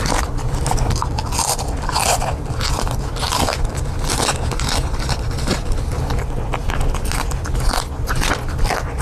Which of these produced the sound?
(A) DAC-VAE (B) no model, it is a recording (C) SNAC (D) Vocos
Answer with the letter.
B